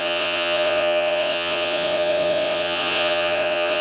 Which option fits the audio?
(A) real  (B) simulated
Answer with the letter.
B